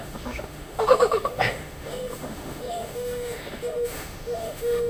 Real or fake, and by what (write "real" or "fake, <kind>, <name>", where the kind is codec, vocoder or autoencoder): fake, autoencoder, DAC-VAE